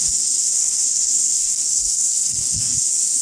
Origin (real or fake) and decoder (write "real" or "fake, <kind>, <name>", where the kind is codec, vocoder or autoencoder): fake, codec, SNAC